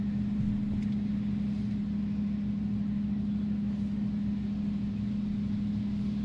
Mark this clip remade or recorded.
recorded